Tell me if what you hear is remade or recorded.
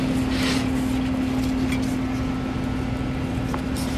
recorded